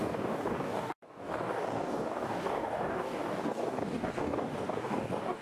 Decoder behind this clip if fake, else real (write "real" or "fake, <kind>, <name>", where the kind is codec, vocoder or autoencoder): fake, codec, DAC